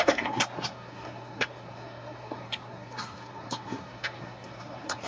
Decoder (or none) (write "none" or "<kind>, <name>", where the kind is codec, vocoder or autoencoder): codec, SNAC